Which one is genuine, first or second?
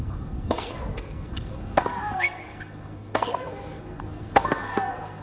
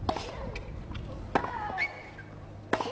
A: second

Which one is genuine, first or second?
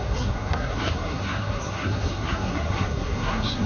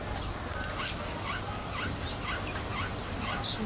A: second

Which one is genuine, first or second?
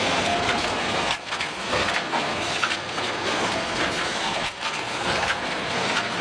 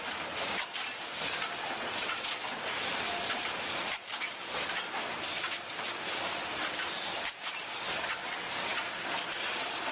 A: second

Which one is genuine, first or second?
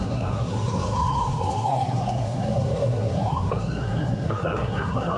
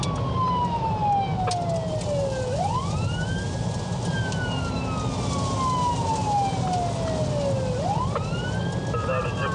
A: second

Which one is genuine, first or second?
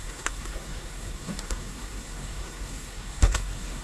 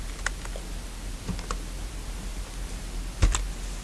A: second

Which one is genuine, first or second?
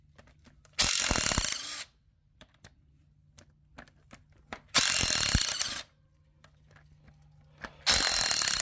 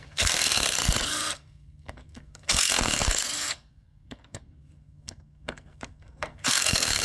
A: first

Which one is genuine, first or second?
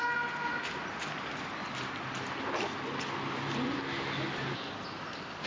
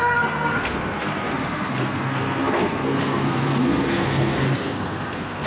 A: first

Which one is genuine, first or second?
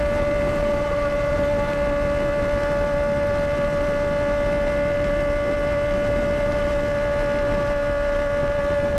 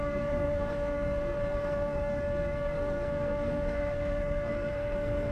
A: first